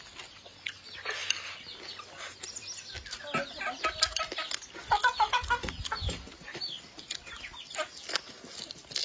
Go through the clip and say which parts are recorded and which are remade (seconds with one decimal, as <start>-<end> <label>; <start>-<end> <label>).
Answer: 0.0-9.0 recorded